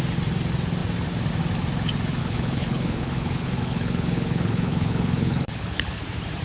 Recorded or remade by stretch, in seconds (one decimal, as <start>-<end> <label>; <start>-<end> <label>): 0.0-2.2 recorded; 2.2-6.0 remade; 6.0-6.4 recorded